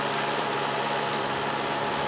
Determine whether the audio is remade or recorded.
remade